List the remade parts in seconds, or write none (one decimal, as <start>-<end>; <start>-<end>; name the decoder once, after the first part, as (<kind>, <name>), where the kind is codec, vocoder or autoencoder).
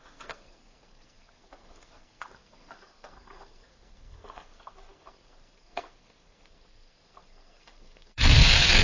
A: 0.0-8.8 (codec, SNAC)